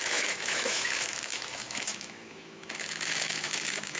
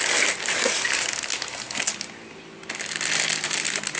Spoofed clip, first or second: first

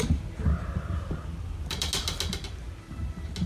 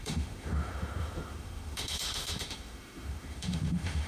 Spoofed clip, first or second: second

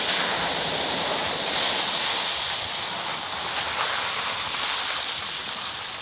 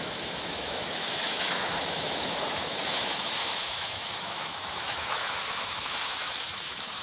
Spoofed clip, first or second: second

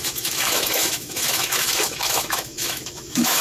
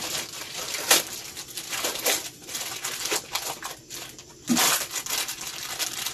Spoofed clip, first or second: first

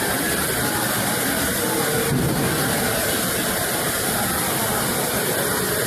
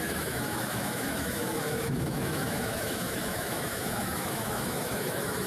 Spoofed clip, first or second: second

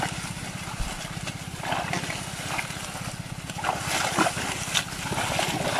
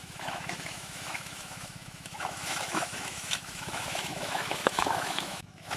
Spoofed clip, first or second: second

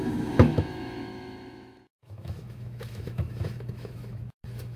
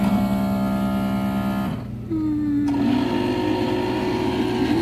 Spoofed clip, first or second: first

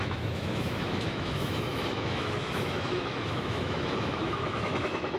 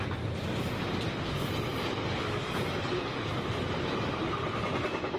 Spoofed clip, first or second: first